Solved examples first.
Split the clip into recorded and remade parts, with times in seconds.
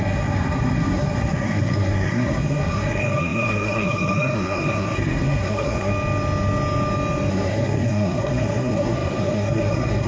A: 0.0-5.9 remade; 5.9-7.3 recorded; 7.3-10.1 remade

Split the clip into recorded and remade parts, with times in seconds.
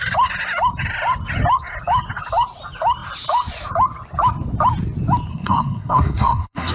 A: 0.0-5.3 recorded; 5.3-6.7 remade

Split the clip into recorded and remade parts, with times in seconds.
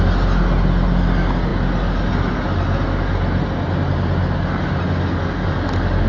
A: 0.0-6.1 recorded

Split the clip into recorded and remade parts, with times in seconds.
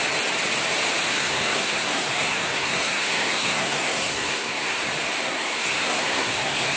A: 0.0-1.1 recorded; 1.1-4.8 remade; 4.8-5.2 recorded; 5.2-6.8 remade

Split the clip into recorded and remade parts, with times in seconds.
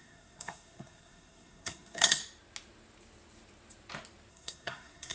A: 0.0-2.2 remade; 2.2-4.3 recorded; 4.3-5.1 remade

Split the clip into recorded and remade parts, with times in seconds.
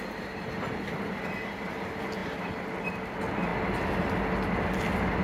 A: 0.0-5.2 recorded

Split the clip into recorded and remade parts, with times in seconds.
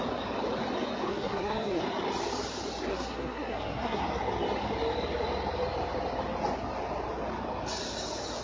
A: 0.0-1.1 recorded; 1.1-1.8 remade; 1.8-2.9 recorded; 2.9-4.0 remade; 4.0-8.4 recorded